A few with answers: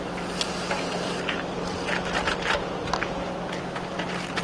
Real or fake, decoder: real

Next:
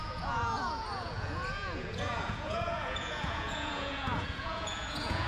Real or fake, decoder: fake, vocoder, Vocos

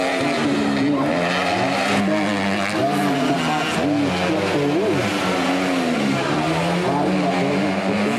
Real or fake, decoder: real